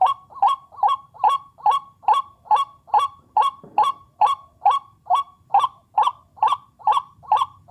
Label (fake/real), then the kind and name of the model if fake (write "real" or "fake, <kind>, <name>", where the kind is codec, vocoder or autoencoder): fake, vocoder, BigVGAN v2